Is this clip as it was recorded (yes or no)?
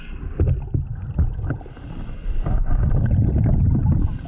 no